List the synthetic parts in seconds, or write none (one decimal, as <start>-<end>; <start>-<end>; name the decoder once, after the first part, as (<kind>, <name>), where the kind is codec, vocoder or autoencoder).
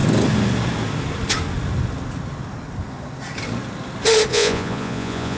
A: 4.3-5.4 (vocoder, Vocos)